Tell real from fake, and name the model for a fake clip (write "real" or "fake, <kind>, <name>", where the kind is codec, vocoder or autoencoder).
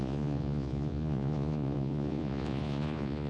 fake, vocoder, Vocos